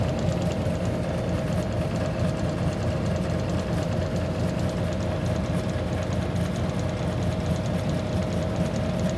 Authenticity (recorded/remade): recorded